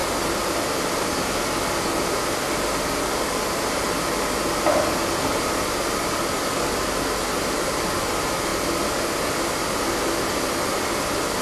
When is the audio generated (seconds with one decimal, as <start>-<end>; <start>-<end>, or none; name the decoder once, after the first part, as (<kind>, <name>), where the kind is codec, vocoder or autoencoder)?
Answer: none